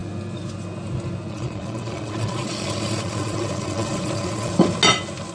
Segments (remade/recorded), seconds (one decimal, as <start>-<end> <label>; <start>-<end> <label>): 0.0-1.3 recorded; 1.3-4.5 remade; 4.5-5.3 recorded